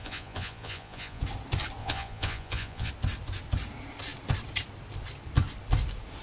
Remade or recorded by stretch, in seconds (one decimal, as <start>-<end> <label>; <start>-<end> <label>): 0.0-1.2 remade; 1.2-1.8 recorded; 1.8-2.9 remade; 2.9-6.2 recorded